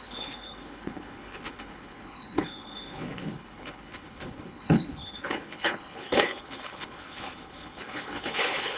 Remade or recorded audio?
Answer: remade